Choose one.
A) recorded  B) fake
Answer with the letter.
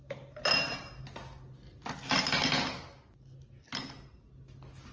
A